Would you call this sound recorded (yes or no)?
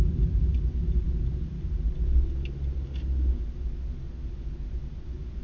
yes